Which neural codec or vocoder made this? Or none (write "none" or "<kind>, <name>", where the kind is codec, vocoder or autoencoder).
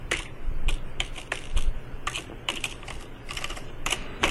vocoder, BigVGAN v2